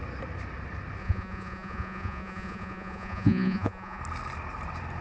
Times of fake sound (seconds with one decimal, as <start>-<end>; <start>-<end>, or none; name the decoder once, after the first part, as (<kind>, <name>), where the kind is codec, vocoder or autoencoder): 1.0-4.0 (vocoder, Vocos)